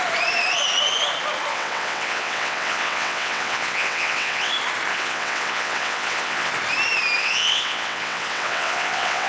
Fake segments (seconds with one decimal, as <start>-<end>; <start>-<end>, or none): 1.5-4.5; 4.9-6.5; 7.2-9.3